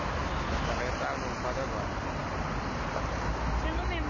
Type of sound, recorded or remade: recorded